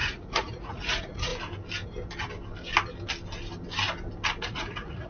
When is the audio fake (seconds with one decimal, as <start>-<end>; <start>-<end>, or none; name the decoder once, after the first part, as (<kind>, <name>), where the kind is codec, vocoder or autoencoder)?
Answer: 0.0-1.3 (vocoder, Vocos); 4.4-5.1